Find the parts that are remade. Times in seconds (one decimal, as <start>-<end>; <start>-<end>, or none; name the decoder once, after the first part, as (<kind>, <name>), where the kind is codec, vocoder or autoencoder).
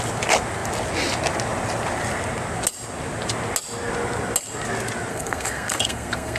5.1-6.4 (codec, SNAC)